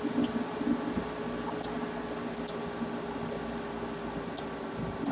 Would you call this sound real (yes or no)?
yes